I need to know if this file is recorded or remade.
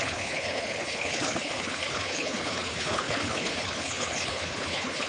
remade